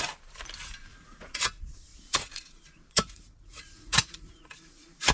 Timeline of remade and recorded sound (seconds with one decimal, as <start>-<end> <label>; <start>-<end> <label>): 0.0-0.9 recorded; 0.9-1.4 remade; 1.4-1.9 recorded; 1.9-5.1 remade